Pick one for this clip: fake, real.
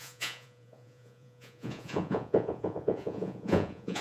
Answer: fake